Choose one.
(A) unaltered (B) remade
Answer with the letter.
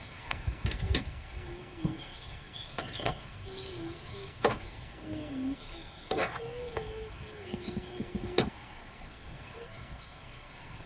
B